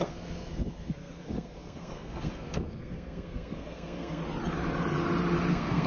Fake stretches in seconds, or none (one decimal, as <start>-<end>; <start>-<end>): 0.0-4.2; 5.5-5.9